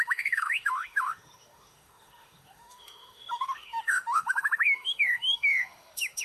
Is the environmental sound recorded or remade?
remade